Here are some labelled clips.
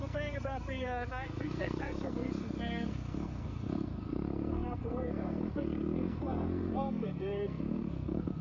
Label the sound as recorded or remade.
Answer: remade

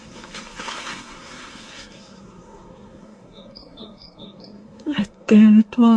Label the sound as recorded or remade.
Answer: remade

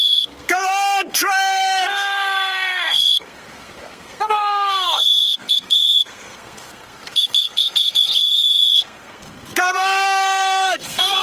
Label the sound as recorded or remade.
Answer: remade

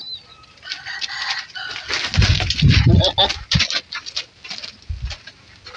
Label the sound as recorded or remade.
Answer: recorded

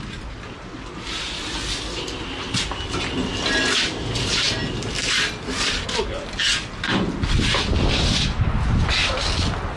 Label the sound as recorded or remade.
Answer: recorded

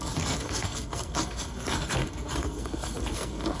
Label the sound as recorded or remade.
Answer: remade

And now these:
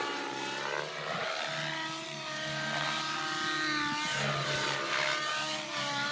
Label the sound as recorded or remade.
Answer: recorded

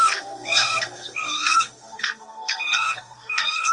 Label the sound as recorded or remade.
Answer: remade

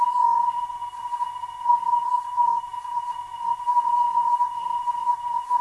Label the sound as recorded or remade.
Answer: remade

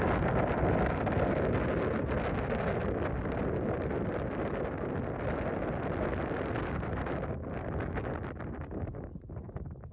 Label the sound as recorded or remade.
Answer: recorded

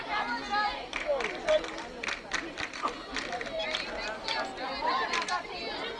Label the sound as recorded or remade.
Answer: recorded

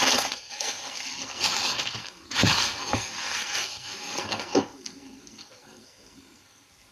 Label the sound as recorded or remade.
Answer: remade